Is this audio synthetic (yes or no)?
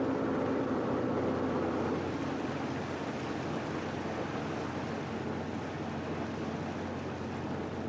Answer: no